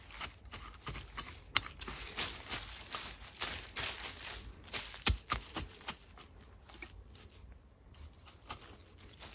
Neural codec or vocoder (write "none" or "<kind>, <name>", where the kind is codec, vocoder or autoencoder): none